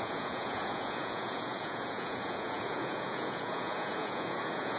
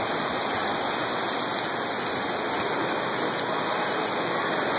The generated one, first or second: first